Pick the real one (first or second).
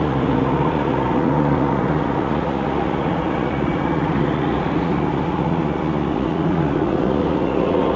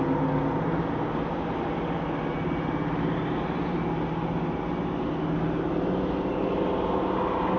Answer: second